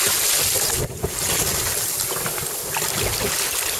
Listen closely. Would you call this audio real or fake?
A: real